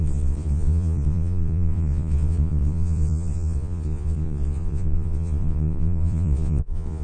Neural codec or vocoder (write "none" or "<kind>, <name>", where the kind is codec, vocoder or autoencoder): vocoder, Vocos